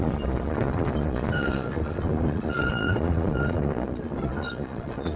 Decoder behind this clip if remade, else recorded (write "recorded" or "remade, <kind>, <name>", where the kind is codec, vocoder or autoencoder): remade, vocoder, Vocos